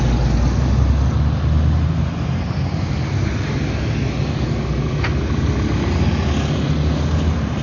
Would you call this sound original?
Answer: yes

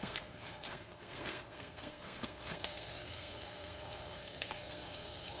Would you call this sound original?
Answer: no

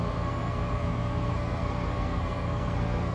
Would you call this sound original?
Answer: no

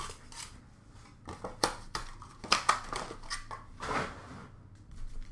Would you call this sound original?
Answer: yes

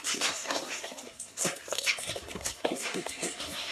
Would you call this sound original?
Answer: no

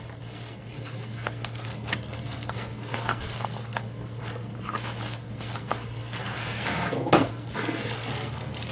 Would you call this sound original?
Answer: no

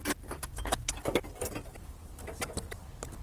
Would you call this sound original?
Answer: yes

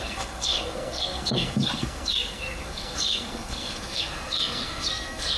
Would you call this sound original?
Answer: no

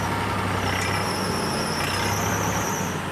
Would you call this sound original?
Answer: yes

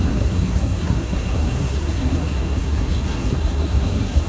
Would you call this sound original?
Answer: no